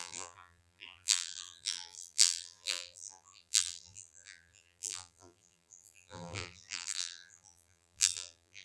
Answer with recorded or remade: remade